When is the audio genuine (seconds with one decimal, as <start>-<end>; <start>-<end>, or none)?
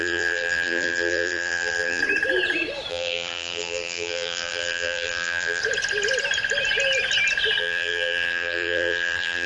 2.0-2.9; 5.6-7.6